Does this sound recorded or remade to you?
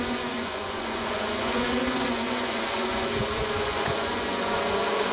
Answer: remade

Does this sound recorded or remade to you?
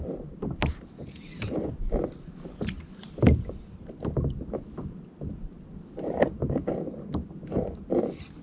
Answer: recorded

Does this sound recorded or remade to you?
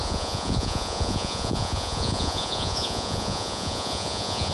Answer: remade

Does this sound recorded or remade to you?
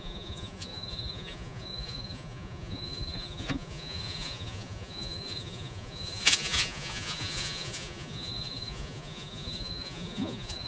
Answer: remade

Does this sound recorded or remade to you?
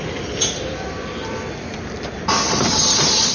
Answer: recorded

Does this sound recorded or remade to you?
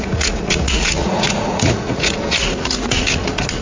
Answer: remade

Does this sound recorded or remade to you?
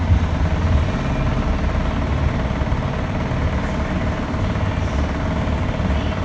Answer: recorded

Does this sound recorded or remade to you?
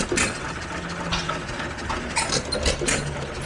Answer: recorded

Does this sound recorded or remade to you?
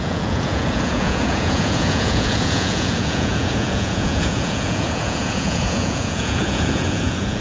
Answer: remade